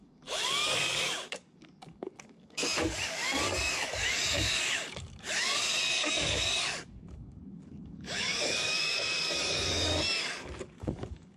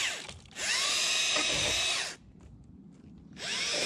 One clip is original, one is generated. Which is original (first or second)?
second